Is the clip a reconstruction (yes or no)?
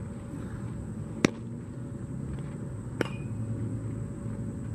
no